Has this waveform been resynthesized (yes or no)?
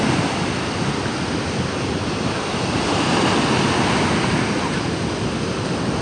no